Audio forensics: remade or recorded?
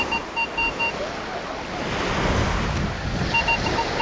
recorded